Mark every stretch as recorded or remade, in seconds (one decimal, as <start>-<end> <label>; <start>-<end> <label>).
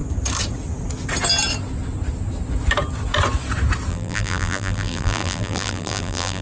0.0-3.9 recorded; 3.9-6.4 remade